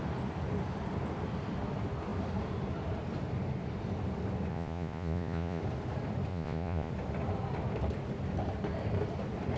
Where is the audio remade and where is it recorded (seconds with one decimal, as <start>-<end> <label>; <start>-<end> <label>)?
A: 0.0-4.5 recorded; 4.5-5.6 remade; 5.6-6.3 recorded; 6.3-6.9 remade; 6.9-9.6 recorded